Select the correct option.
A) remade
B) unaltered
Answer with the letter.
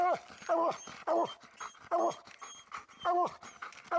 B